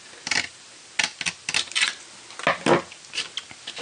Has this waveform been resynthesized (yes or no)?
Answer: no